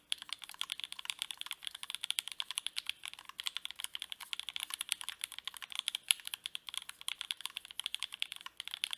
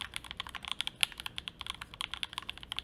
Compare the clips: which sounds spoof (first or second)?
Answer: first